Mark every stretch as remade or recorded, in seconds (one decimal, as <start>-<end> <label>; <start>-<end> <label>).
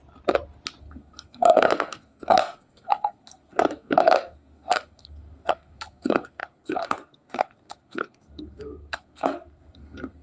0.0-0.8 recorded; 0.8-10.2 remade